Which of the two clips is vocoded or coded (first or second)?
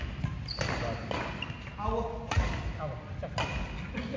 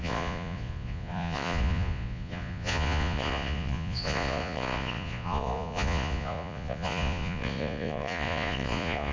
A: second